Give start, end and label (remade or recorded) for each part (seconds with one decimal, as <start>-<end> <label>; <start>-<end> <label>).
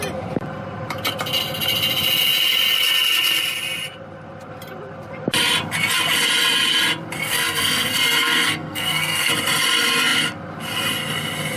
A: 0.0-7.2 recorded; 7.2-9.3 remade; 9.3-11.6 recorded